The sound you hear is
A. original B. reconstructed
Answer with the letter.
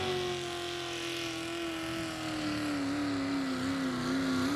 A